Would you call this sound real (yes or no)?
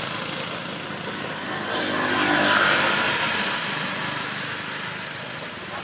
yes